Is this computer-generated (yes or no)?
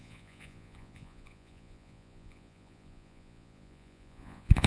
yes